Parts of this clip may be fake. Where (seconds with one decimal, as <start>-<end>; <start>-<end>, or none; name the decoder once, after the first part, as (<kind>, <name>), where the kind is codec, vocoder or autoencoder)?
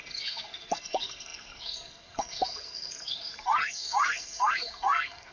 0.0-5.3 (codec, SNAC)